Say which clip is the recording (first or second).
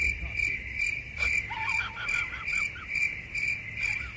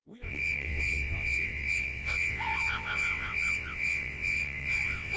first